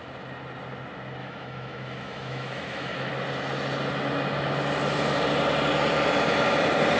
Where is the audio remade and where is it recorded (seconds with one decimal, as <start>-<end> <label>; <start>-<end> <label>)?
0.0-1.2 recorded; 1.2-3.1 remade; 3.1-7.0 recorded